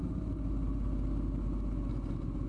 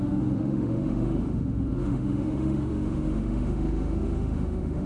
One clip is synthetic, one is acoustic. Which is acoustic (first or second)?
first